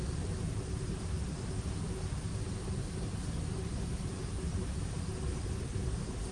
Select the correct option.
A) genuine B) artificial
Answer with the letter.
A